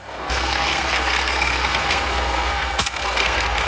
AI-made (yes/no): yes